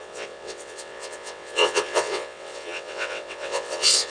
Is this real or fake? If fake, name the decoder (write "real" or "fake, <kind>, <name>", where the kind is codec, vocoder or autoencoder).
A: fake, vocoder, WaveNeXt